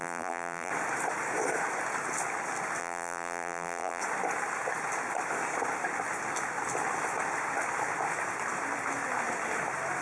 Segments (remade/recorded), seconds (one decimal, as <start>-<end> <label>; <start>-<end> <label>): 0.0-0.7 remade; 0.7-2.8 recorded; 2.8-4.0 remade; 4.0-10.0 recorded